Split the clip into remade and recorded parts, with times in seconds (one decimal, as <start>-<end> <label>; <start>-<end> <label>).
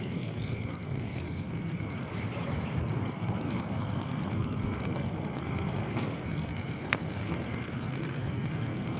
0.0-2.1 remade; 2.1-2.8 recorded; 2.8-9.0 remade